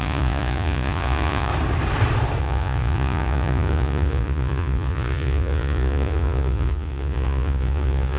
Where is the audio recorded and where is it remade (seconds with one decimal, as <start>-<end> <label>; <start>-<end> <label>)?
0.0-1.5 remade; 1.5-2.4 recorded; 2.4-8.2 remade